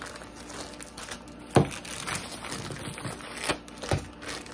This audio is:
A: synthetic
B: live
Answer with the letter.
B